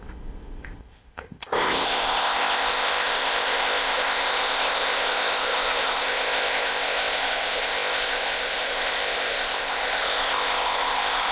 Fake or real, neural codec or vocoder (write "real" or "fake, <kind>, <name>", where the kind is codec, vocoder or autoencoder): fake, codec, ZipCodec